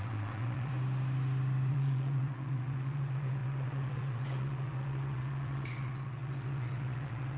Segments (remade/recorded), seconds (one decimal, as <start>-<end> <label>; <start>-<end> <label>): 0.0-0.7 remade; 0.7-1.7 recorded; 1.7-7.4 remade

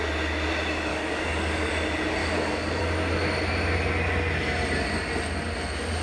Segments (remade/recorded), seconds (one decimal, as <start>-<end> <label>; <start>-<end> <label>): 0.0-0.9 recorded; 0.9-1.7 remade; 1.7-2.2 recorded; 2.2-2.8 remade; 2.8-6.0 recorded

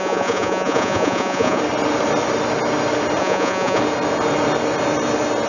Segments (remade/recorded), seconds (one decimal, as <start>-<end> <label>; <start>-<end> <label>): 0.0-1.6 remade; 1.6-3.2 recorded; 3.2-3.8 remade; 3.8-5.5 recorded

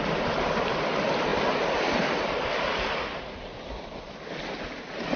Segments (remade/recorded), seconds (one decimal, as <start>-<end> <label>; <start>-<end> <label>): 0.0-5.2 recorded

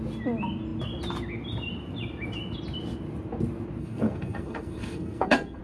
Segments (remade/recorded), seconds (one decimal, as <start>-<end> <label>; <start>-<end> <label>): 0.0-3.8 recorded; 3.8-5.6 remade